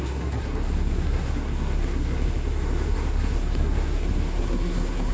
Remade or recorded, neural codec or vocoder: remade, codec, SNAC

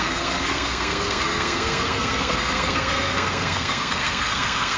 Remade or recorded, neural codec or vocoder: remade, codec, SNAC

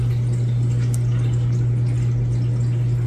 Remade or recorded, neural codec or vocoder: recorded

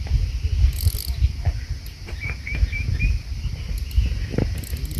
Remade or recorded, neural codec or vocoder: recorded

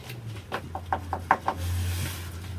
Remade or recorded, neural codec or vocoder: recorded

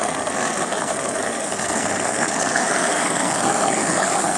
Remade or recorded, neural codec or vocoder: remade, codec, SNAC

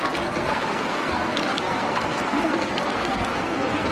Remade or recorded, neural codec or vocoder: remade, codec, SNAC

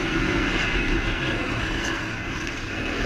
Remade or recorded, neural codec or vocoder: remade, codec, SNAC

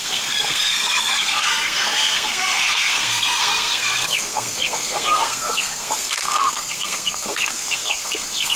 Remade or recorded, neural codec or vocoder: remade, codec, SNAC